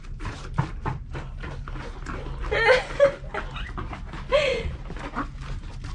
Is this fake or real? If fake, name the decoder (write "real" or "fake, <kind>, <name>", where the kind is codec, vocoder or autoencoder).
real